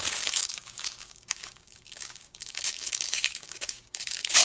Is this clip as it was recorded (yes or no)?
no